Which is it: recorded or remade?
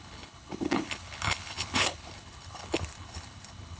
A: remade